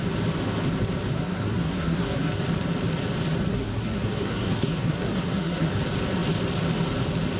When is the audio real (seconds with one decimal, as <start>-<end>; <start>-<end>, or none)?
0.0-1.1; 2.4-3.5; 5.8-7.4